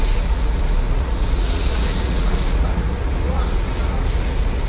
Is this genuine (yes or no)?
no